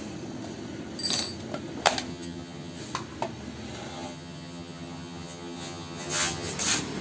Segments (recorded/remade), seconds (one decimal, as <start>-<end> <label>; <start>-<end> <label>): 0.0-2.1 recorded; 2.1-2.8 remade; 2.8-3.9 recorded; 3.9-6.5 remade; 6.5-7.0 recorded